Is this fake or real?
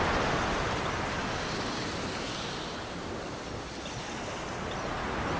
real